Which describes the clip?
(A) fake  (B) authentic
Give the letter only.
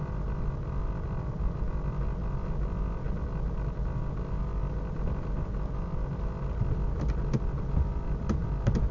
B